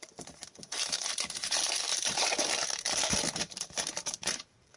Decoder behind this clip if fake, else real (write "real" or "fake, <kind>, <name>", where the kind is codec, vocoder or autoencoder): fake, vocoder, BigVGAN v2